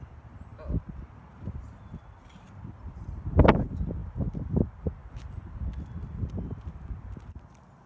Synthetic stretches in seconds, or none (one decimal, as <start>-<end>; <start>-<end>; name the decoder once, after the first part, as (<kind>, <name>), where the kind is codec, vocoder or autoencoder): none